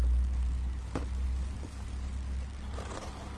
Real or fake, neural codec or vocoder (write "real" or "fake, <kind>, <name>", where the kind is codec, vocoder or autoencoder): real